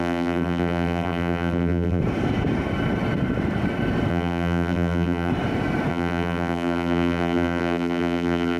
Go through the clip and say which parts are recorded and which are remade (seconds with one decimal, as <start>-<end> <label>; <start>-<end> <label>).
0.0-2.0 remade; 2.0-4.1 recorded; 4.1-5.3 remade; 5.3-5.9 recorded; 5.9-8.6 remade